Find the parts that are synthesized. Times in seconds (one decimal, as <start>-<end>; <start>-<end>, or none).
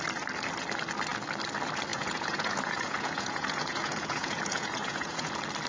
1.9-5.3